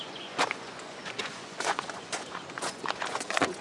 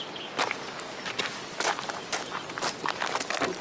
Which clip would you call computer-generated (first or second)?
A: first